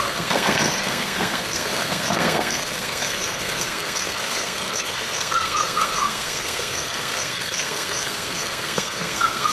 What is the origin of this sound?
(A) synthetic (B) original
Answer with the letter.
A